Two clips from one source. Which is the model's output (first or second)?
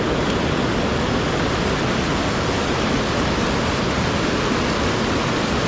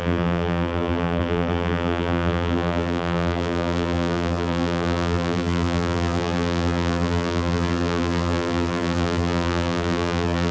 second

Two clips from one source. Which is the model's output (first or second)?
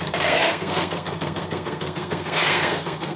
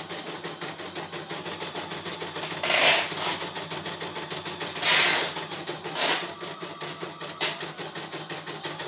first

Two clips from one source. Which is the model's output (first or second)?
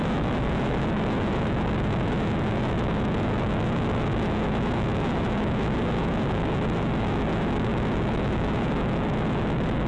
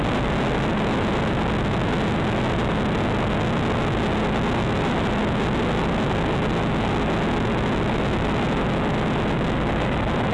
first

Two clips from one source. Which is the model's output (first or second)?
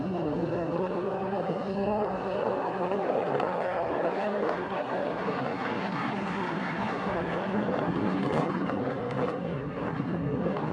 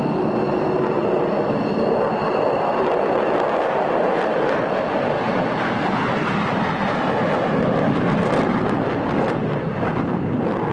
first